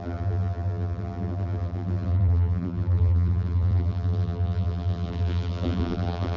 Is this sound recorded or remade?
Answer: remade